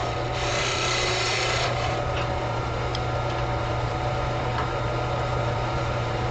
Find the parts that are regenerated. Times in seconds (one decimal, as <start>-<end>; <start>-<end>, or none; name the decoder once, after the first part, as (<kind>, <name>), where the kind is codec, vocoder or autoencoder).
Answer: 0.5-2.9 (vocoder, BigVGAN v2); 3.6-6.3